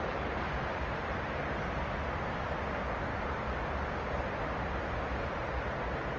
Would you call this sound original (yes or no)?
yes